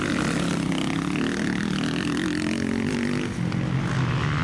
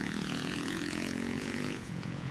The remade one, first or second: second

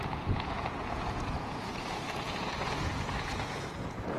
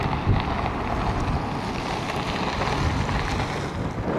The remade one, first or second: first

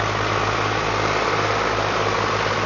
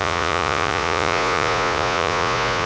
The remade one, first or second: second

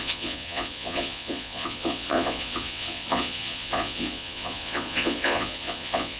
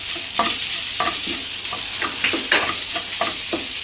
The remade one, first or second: first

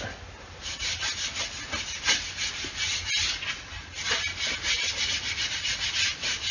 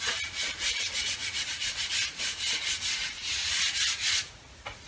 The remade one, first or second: second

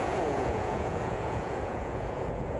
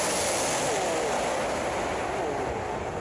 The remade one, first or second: first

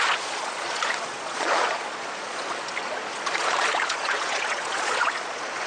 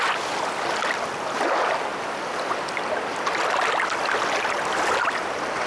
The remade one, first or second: first